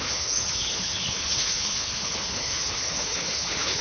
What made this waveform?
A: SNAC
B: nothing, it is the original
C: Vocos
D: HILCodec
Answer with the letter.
D